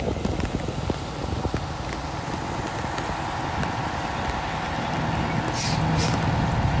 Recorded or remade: recorded